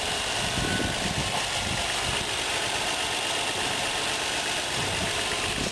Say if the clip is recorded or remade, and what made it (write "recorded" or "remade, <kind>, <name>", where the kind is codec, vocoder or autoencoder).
recorded